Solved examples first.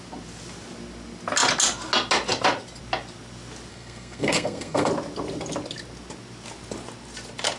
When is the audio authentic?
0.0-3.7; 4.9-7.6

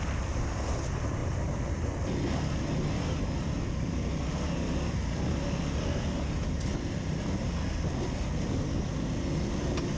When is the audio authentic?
0.0-10.0